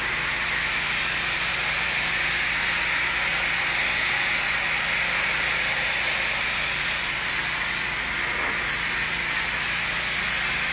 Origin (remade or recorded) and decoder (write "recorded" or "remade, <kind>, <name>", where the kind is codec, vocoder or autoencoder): recorded